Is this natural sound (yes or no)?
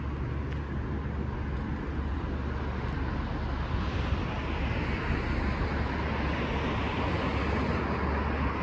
yes